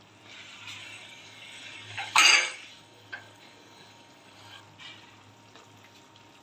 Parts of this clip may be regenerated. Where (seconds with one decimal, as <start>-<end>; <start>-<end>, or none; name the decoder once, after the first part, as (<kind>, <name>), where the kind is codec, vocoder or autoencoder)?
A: 0.8-4.6 (codec, DAC)